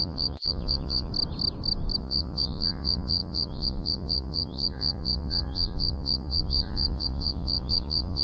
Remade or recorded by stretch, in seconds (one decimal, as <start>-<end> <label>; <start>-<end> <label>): 0.0-1.1 remade; 1.1-2.0 recorded; 2.0-8.2 remade